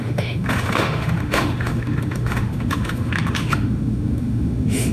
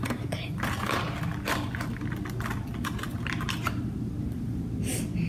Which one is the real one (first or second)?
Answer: second